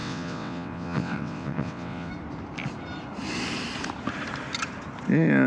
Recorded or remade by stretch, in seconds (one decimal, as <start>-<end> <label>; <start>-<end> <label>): 0.0-2.1 remade; 2.1-5.5 recorded